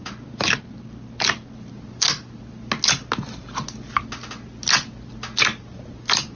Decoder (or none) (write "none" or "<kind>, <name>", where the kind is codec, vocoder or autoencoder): none